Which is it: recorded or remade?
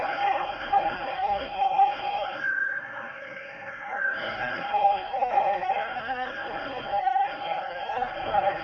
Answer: remade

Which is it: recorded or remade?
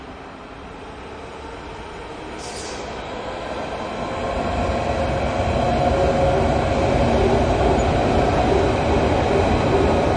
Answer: recorded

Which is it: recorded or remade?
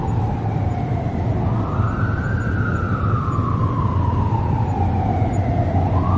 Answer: recorded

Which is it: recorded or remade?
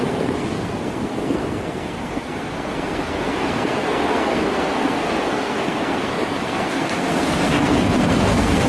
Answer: remade